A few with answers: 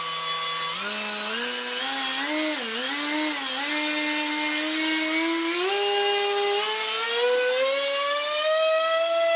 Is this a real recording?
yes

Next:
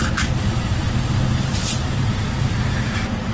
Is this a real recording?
no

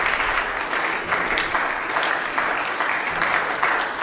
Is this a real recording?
yes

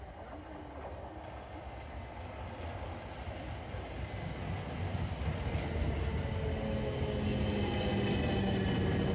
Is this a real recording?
yes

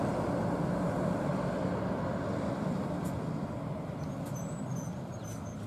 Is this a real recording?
yes